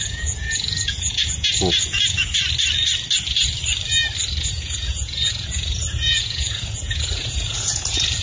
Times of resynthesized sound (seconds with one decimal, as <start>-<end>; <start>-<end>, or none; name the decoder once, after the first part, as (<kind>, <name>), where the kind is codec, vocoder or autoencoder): 0.0-2.3 (vocoder, Vocos); 4.4-8.2